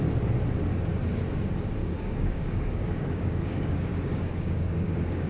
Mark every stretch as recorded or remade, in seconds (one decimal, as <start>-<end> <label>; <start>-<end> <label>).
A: 0.0-1.8 recorded; 1.8-5.3 remade